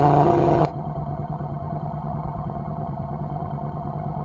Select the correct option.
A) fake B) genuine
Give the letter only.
A